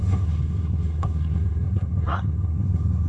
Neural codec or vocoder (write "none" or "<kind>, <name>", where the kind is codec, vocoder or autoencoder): codec, SNAC